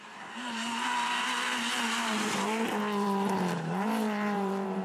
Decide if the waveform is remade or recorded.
remade